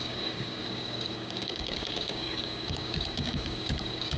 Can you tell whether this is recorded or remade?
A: remade